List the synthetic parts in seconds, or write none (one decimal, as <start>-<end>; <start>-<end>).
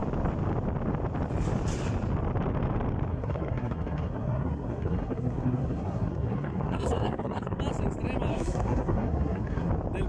3.1-7.6; 8.3-9.7